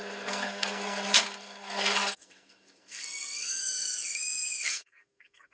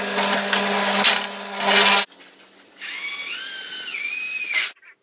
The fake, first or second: first